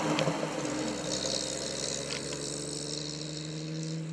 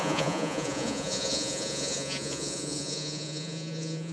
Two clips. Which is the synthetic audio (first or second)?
second